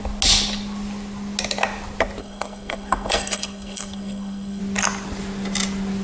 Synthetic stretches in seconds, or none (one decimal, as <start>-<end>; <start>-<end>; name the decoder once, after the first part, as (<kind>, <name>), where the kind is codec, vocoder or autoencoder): 2.2-4.6 (codec, SNAC)